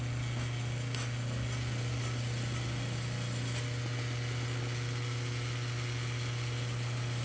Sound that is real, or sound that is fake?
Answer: real